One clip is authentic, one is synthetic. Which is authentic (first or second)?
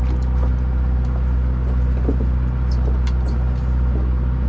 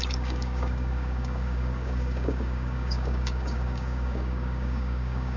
first